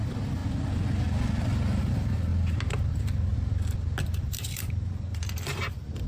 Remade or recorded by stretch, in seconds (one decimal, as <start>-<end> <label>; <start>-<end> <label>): 0.0-0.4 remade; 0.4-1.8 recorded; 1.8-2.3 remade; 2.3-2.9 recorded; 2.9-3.3 remade; 3.3-4.0 recorded; 4.0-6.1 remade